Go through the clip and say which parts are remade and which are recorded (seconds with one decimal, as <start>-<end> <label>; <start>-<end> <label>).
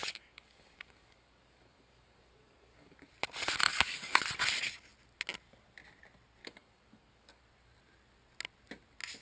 0.0-3.1 remade; 3.1-3.7 recorded; 3.7-4.2 remade; 4.2-6.4 recorded; 6.4-7.4 remade; 7.4-9.2 recorded